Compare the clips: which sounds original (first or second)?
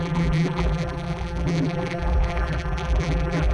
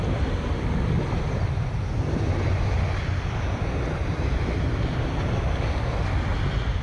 second